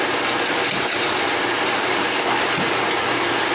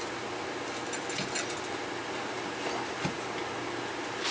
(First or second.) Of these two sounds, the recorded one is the second